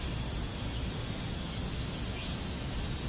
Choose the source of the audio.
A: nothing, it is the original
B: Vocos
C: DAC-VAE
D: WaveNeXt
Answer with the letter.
A